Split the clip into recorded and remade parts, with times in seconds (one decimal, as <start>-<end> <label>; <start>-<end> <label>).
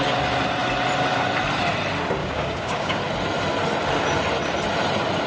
0.0-2.2 recorded; 2.2-3.0 remade; 3.0-5.3 recorded